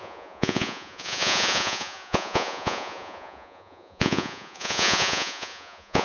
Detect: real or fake fake